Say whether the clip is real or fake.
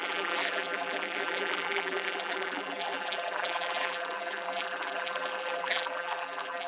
fake